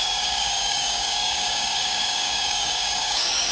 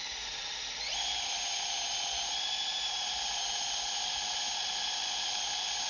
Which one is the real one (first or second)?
second